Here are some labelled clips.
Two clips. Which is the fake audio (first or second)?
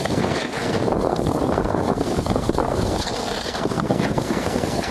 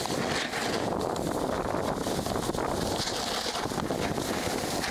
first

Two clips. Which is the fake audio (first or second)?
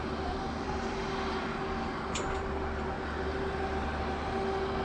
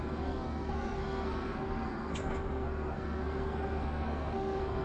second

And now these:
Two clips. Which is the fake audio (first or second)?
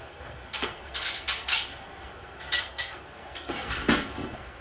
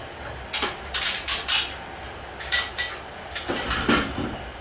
first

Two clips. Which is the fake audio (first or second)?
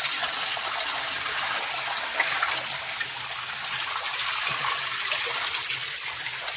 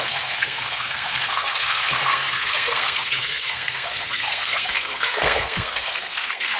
second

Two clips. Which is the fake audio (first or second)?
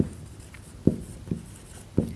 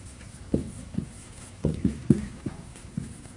second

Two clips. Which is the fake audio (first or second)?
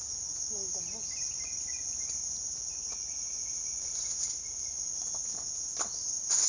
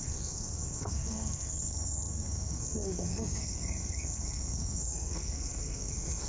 second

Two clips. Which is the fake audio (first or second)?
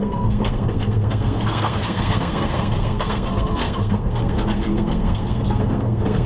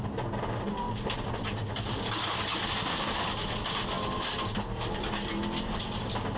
first